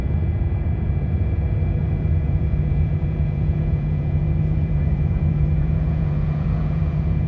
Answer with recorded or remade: remade